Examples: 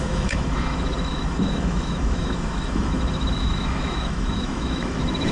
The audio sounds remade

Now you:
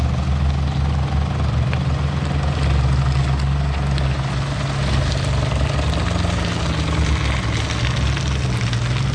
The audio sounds recorded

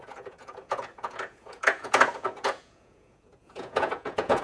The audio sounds remade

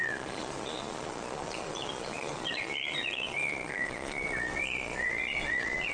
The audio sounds remade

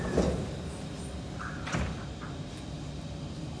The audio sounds recorded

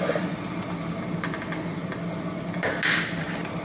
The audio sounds recorded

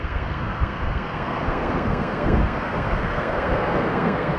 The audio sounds remade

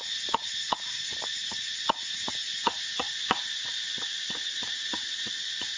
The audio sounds remade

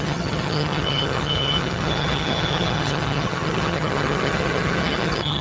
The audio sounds remade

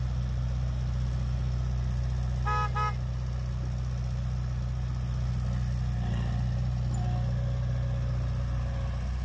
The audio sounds recorded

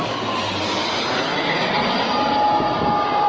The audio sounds recorded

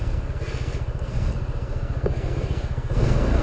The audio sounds remade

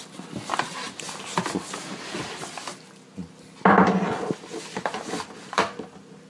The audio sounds recorded